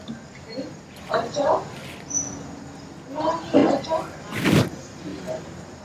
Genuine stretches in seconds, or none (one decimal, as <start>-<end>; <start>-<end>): 0.0-5.1